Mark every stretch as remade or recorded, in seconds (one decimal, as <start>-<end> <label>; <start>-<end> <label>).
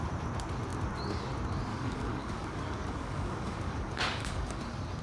0.0-1.7 recorded; 1.7-4.6 remade; 4.6-5.0 recorded